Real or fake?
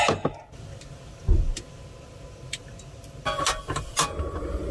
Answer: real